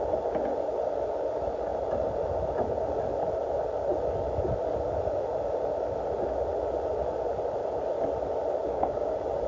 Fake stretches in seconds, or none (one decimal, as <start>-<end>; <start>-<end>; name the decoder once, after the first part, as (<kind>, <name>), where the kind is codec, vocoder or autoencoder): 8.6-9.1 (codec, DAC)